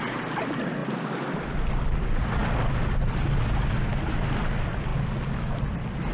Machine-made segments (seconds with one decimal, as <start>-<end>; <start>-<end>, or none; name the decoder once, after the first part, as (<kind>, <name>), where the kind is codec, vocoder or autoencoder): none